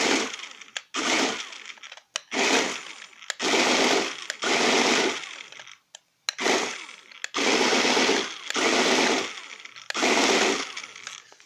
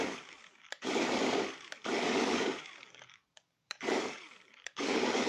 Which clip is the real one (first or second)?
first